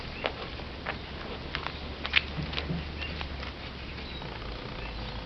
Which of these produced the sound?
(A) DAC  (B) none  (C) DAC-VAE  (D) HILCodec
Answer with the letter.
B